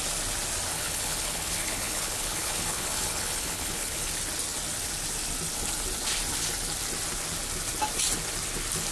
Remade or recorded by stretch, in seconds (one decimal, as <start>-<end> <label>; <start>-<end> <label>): 0.0-0.7 recorded; 0.7-4.1 remade; 4.1-8.9 recorded